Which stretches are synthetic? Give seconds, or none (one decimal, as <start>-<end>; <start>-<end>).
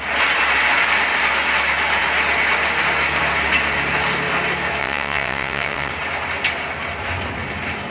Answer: 4.8-5.9